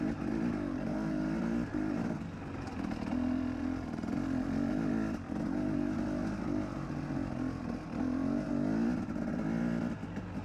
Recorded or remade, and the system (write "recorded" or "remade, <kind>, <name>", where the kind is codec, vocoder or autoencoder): recorded